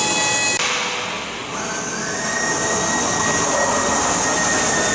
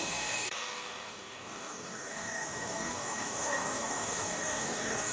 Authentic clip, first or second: first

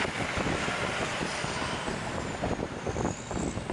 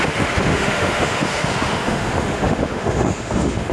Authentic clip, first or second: first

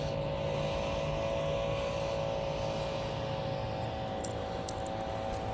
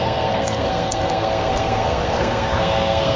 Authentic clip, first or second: first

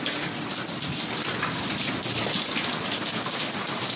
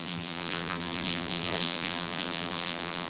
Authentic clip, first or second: first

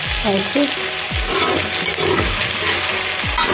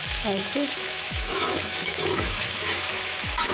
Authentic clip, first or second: first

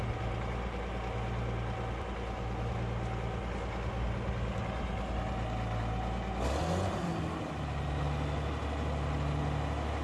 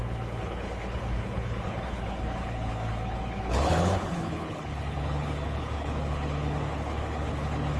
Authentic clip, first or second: first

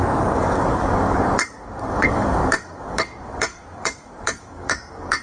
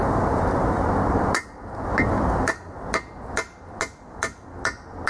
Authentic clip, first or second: second